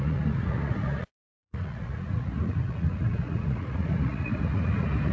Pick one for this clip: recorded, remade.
remade